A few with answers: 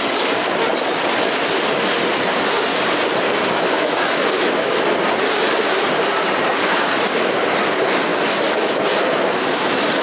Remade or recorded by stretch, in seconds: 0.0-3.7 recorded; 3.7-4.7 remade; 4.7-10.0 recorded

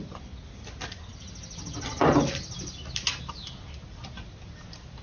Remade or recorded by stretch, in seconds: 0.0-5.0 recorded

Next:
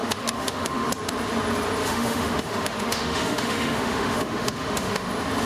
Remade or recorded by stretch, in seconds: 0.0-0.9 remade; 0.9-1.8 recorded; 1.8-5.1 remade; 5.1-5.5 recorded

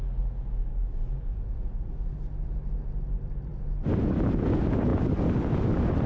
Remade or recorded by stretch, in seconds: 0.0-6.1 recorded

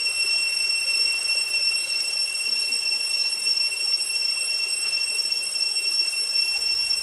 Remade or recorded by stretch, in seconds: 0.0-7.0 recorded